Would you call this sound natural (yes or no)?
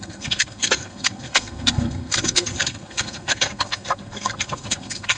no